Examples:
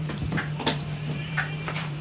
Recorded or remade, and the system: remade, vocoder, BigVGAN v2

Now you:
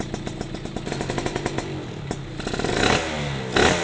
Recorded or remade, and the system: recorded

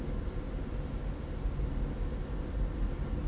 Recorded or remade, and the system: recorded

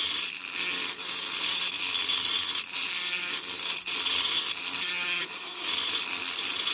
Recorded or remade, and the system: recorded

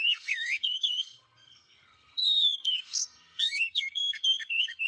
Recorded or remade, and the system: remade, codec, SNAC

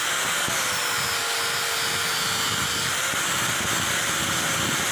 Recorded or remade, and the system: recorded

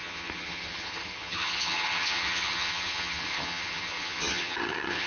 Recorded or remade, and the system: remade, vocoder, HiFi-GAN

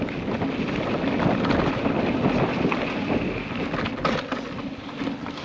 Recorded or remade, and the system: recorded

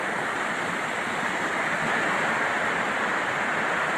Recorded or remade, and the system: recorded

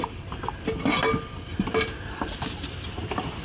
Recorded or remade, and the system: recorded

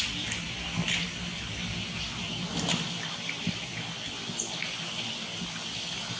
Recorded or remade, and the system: recorded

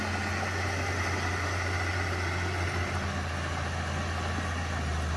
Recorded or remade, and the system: recorded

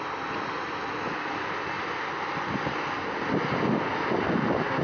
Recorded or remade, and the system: recorded